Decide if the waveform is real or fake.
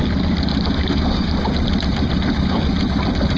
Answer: real